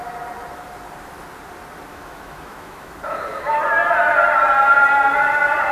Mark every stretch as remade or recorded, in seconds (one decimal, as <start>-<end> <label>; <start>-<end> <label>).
0.0-1.9 recorded; 1.9-3.0 remade; 3.0-5.7 recorded